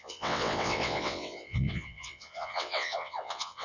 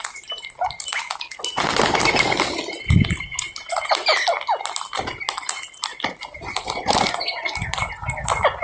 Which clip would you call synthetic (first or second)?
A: first